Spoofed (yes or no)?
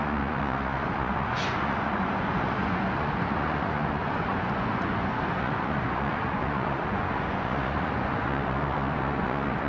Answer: yes